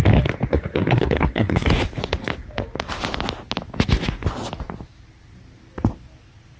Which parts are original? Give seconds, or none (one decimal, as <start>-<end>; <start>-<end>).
0.0-0.5; 1.7-6.6

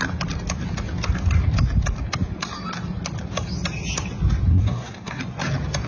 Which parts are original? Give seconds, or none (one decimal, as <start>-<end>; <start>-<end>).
0.0-4.5; 5.2-5.9

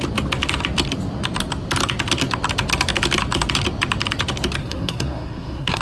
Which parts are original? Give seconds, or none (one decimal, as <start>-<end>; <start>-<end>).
0.0-4.6

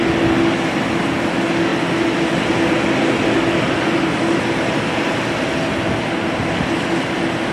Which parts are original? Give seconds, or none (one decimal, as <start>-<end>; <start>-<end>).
0.0-7.5

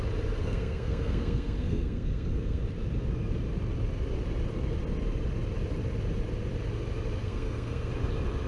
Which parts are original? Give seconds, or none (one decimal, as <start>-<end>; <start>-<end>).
0.0-0.4; 2.6-7.2; 7.9-8.5

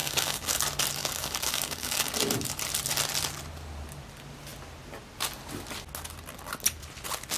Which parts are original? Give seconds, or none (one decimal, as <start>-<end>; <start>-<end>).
0.6-1.0; 2.1-7.4

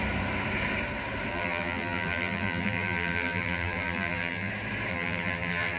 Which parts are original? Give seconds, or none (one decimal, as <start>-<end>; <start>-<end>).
0.0-1.3; 4.5-4.9